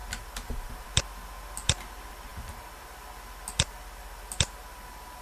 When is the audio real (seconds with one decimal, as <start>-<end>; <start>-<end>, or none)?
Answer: 0.0-5.2